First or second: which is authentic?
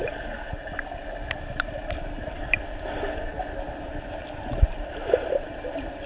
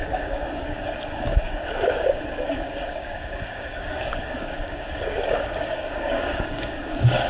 first